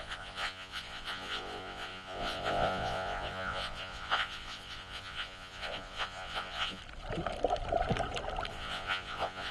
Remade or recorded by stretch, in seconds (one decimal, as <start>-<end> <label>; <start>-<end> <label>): 0.0-6.8 remade; 6.8-8.5 recorded; 8.5-9.5 remade